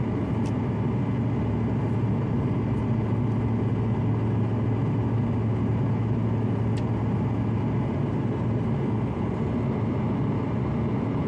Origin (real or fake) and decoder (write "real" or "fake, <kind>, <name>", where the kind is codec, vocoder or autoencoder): real